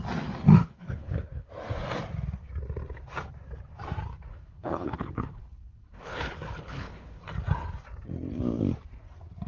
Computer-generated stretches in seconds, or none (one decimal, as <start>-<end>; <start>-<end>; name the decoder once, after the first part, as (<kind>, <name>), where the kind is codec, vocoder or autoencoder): 0.6-1.5 (codec, HILCodec); 4.3-7.2